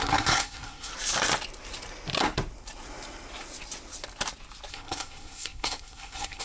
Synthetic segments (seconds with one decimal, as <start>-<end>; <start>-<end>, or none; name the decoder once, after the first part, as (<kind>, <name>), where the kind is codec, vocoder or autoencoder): 0.0-0.9 (codec, SNAC); 4.7-6.4